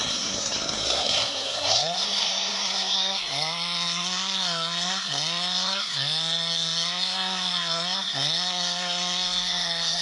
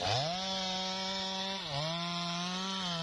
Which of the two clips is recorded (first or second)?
second